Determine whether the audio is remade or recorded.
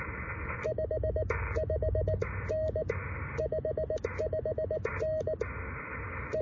recorded